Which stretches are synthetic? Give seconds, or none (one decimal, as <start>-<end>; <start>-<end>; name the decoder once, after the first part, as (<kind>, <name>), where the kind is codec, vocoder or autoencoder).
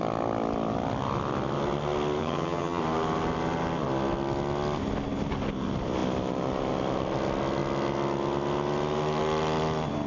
2.2-2.8 (vocoder, HiFi-GAN)